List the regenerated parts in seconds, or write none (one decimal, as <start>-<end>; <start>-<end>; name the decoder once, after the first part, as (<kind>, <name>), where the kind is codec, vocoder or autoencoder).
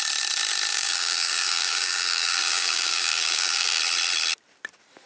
0.7-3.8 (codec, DAC)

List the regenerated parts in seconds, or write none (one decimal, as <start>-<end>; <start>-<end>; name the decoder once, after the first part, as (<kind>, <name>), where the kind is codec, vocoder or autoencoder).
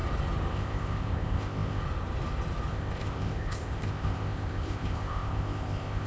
0.5-1.8 (codec, ZipCodec); 2.7-6.1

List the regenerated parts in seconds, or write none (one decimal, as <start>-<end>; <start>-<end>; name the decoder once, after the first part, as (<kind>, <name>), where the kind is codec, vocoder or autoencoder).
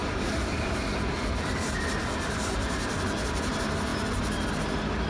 0.0-3.1 (vocoder, BigVGAN v2)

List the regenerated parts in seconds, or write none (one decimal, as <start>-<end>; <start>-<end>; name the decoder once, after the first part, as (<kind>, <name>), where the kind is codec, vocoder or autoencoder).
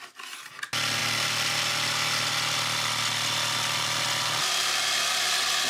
none